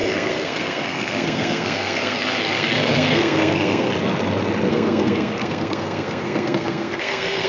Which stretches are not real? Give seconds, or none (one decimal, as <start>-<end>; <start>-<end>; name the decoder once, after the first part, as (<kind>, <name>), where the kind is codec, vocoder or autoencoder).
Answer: 0.0-3.9 (codec, SNAC); 4.7-7.5